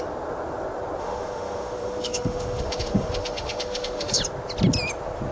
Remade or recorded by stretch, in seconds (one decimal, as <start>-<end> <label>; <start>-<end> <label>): 0.0-1.0 recorded; 1.0-4.2 remade; 4.2-5.3 recorded

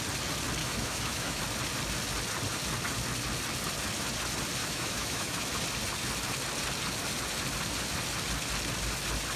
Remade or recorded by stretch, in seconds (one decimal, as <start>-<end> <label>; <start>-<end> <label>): 0.0-0.6 recorded; 0.6-1.4 remade; 1.4-4.6 recorded; 4.6-5.4 remade; 5.4-9.4 recorded

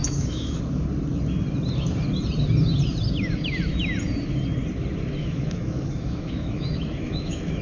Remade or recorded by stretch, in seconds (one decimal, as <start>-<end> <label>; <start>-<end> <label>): 0.0-0.6 remade; 0.6-5.2 recorded; 5.2-7.6 remade